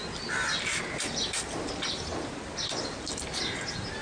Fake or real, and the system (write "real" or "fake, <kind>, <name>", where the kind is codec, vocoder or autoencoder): real